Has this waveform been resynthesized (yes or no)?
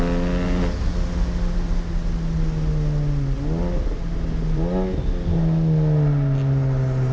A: no